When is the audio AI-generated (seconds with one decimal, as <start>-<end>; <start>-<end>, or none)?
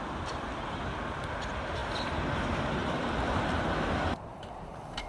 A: 2.8-3.8